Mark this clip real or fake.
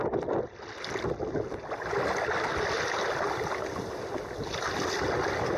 real